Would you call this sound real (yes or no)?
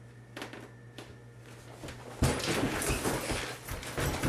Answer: yes